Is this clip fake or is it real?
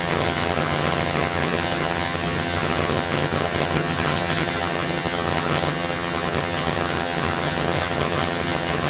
fake